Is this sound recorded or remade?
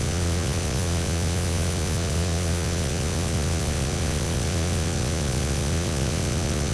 remade